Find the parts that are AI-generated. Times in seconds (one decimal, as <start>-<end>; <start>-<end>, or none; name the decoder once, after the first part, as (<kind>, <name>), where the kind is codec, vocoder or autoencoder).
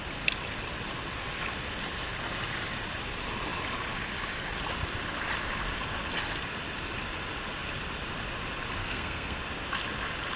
8.8-9.4 (codec, SNAC)